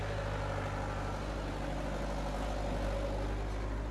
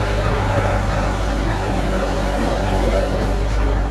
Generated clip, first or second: second